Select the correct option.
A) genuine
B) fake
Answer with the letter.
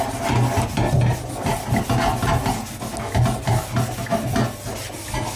A